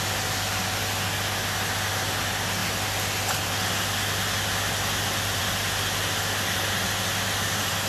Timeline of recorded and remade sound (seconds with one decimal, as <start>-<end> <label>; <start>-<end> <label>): 0.0-7.9 recorded